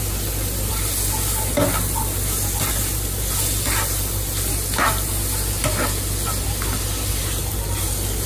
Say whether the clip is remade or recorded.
recorded